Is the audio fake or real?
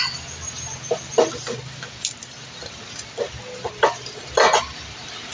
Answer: real